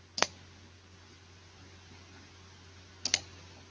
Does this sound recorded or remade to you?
recorded